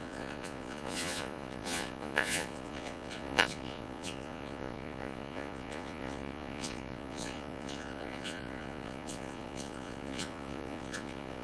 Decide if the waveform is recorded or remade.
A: remade